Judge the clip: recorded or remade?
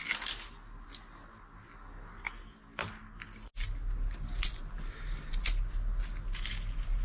recorded